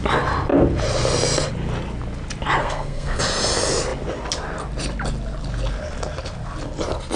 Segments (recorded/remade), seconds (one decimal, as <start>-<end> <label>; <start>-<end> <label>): 0.0-2.6 recorded; 2.6-3.2 remade; 3.2-7.2 recorded